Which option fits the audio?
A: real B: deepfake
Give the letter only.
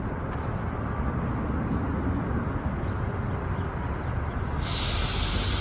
A